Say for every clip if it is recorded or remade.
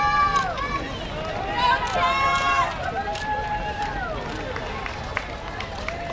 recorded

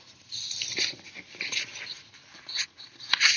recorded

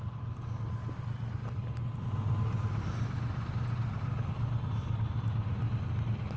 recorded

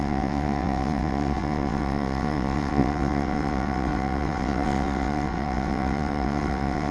remade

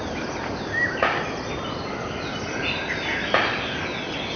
recorded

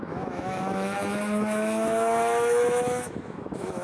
remade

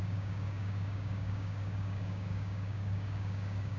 remade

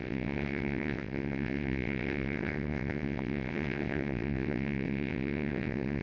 remade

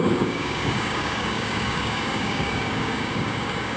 remade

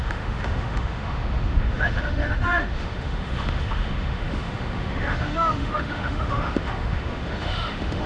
remade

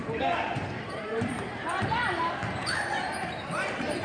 remade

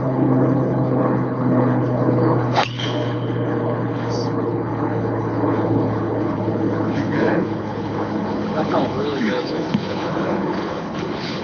remade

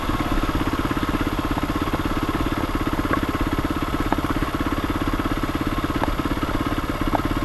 recorded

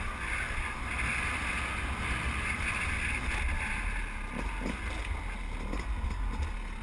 recorded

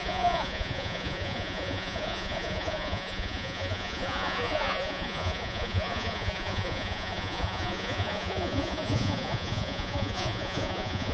remade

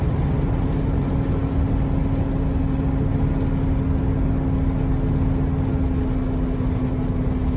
recorded